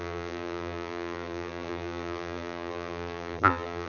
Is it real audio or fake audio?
fake